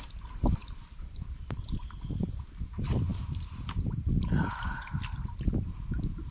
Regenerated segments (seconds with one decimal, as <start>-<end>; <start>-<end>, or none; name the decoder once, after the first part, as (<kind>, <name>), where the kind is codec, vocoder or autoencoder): 0.6-2.3 (vocoder, BigVGAN v2); 3.1-3.9